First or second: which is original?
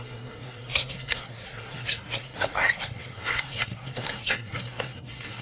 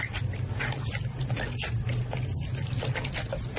second